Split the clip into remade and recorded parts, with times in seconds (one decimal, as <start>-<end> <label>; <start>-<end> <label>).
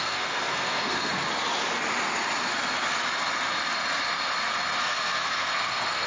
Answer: 0.0-1.1 remade; 1.1-4.8 recorded; 4.8-6.1 remade